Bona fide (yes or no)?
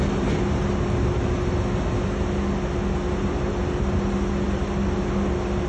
yes